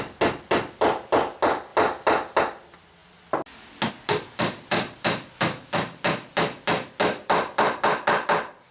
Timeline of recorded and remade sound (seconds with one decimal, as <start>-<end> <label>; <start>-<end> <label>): 0.0-8.7 recorded